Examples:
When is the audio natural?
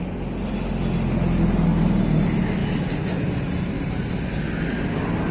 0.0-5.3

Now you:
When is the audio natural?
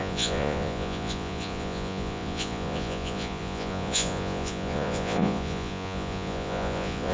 none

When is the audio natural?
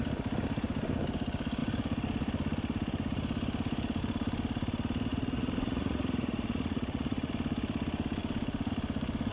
0.0-5.1; 7.3-9.3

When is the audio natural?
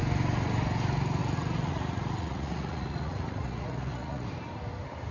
0.0-1.2; 4.3-5.1